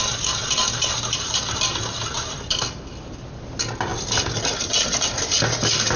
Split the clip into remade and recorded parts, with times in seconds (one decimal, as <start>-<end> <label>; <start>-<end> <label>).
0.0-6.0 recorded